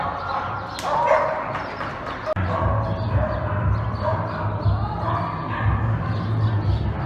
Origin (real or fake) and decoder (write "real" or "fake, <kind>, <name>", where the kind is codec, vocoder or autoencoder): real